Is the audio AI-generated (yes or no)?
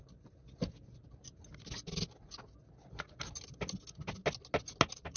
no